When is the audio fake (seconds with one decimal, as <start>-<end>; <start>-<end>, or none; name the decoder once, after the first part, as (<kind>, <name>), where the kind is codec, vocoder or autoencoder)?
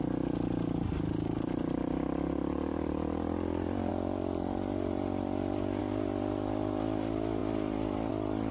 none